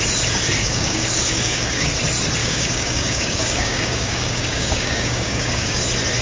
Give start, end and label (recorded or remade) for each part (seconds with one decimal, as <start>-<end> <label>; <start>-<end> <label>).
0.0-0.6 recorded; 0.6-1.9 remade; 1.9-2.4 recorded; 2.4-5.8 remade; 5.8-6.2 recorded